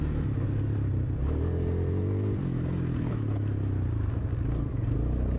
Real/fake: real